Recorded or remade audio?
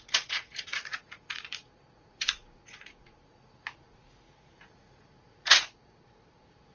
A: remade